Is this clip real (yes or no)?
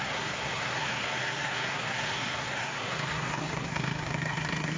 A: no